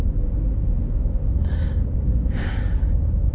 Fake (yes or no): yes